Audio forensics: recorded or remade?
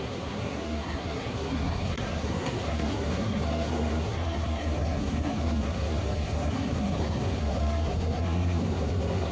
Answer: remade